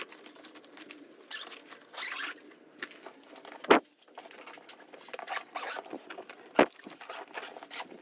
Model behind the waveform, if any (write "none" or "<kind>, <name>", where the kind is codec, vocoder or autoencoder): none